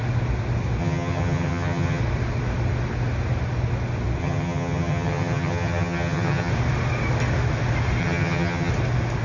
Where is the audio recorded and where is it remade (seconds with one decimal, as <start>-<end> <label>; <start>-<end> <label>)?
0.0-0.8 recorded; 0.8-2.0 remade; 2.0-4.2 recorded; 4.2-6.5 remade; 6.5-8.0 recorded; 8.0-8.7 remade; 8.7-9.2 recorded